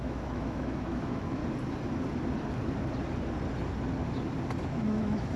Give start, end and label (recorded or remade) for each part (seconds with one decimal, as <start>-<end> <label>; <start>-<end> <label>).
0.0-1.4 remade; 1.4-4.6 recorded; 4.6-5.4 remade